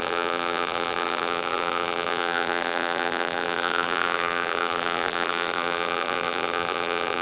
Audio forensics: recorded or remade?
remade